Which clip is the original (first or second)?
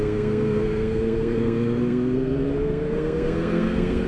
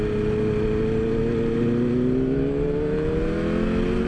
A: second